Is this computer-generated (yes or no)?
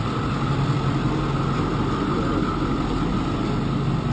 no